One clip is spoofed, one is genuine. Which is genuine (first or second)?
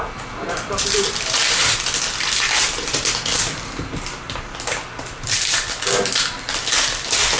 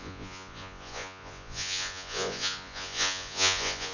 first